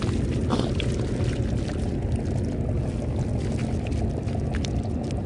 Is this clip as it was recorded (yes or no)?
yes